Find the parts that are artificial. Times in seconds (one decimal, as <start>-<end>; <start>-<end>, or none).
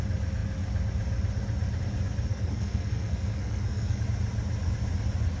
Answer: 2.3-4.0